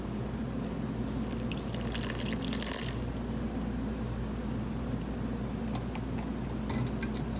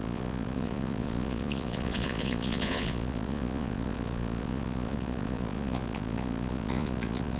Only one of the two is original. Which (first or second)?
first